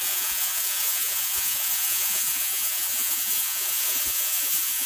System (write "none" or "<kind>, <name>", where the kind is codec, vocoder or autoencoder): vocoder, Vocos